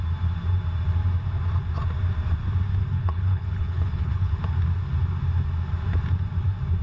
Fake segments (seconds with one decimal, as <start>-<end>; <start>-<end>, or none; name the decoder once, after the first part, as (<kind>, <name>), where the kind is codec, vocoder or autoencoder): 2.9-4.4 (codec, HILCodec)